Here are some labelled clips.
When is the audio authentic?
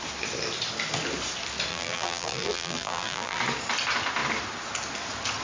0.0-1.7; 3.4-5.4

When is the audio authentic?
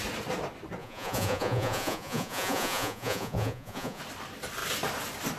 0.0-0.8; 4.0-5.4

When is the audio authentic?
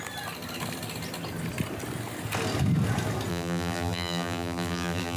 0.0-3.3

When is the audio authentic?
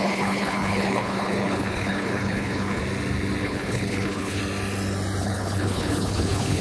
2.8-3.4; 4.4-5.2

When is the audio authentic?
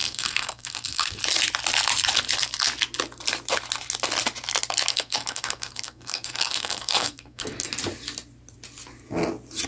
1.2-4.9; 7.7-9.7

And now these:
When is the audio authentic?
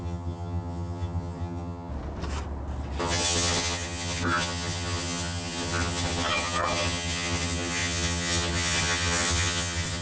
1.9-3.0